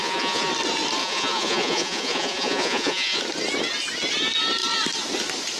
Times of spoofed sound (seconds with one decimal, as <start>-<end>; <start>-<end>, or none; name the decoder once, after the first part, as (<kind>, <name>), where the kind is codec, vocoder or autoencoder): 0.0-0.5 (vocoder, Vocos); 1.0-3.2